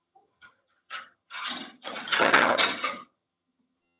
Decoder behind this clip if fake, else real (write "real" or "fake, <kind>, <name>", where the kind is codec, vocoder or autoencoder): fake, vocoder, HiFi-GAN